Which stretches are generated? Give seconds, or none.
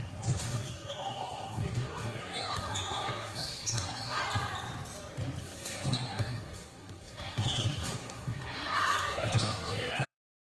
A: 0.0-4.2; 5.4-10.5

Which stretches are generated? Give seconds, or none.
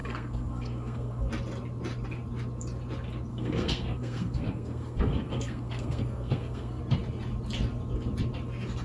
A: 0.0-1.3; 3.3-6.8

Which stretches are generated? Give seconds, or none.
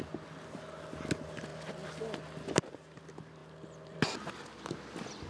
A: none